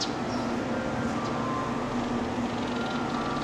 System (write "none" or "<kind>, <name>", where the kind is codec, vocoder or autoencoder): none